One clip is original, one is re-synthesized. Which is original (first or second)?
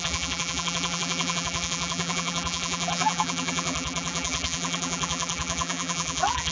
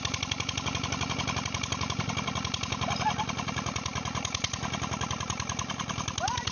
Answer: second